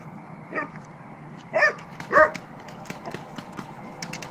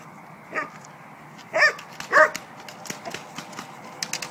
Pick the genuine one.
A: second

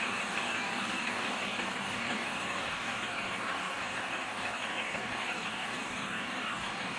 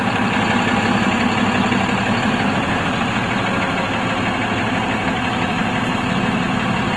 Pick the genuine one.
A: second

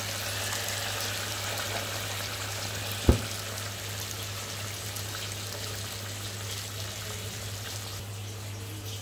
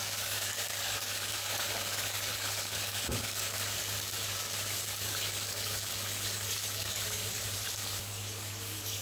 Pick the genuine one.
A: first